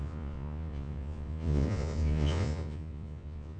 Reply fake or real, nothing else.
fake